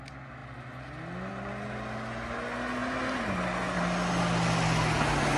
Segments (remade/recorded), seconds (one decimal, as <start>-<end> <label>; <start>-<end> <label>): 0.0-5.4 recorded